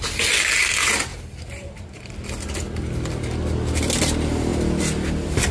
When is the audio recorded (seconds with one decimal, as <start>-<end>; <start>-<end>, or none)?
0.0-1.1; 2.1-5.5